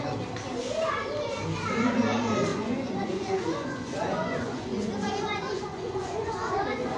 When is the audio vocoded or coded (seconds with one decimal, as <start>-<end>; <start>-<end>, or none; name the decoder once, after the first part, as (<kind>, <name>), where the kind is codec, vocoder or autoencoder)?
2.5-7.0 (vocoder, Vocos)